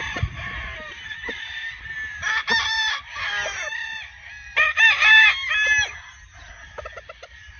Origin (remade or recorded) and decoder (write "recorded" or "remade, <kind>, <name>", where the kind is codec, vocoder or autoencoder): recorded